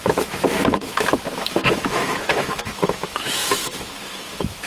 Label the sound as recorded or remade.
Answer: remade